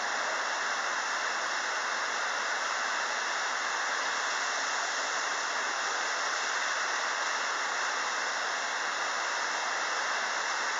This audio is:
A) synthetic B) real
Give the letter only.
B